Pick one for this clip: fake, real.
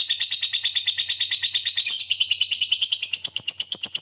fake